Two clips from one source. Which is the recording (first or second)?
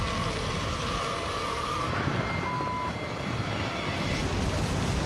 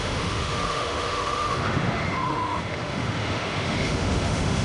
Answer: first